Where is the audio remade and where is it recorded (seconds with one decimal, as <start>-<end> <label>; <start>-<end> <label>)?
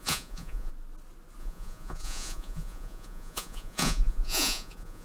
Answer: 0.0-0.7 remade; 0.7-1.4 recorded; 1.4-5.0 remade